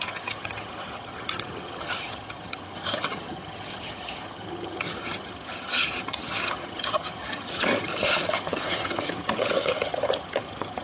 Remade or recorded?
remade